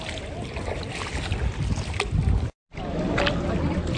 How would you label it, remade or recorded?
recorded